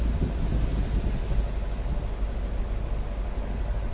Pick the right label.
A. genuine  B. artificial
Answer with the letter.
A